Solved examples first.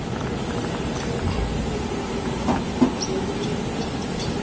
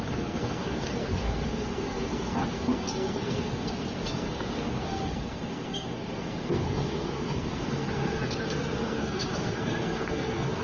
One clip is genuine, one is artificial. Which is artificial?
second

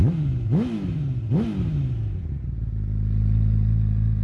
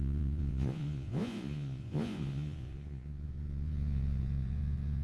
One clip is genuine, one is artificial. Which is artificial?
second